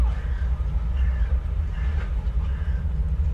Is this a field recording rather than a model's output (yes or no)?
yes